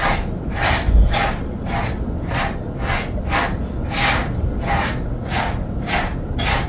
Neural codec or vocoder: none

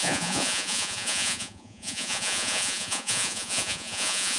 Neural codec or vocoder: vocoder, Vocos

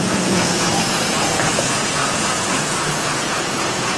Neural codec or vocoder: vocoder, Vocos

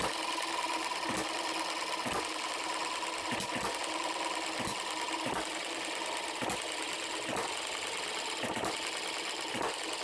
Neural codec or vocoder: none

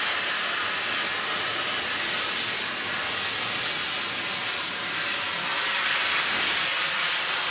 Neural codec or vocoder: none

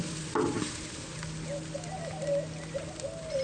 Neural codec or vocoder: none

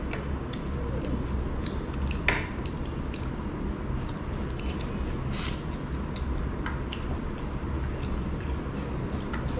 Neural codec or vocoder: none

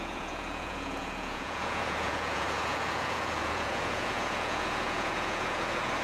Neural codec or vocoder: vocoder, Vocos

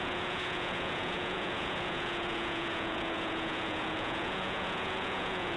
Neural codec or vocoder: vocoder, Vocos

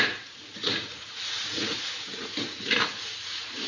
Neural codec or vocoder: vocoder, Vocos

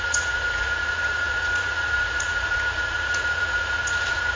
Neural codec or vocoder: vocoder, Vocos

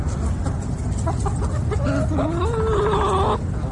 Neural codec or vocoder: none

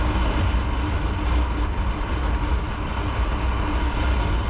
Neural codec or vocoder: none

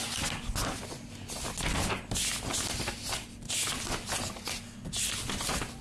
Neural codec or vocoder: none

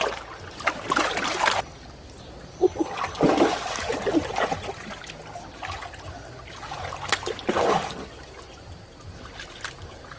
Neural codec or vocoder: none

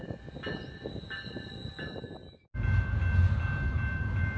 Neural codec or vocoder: none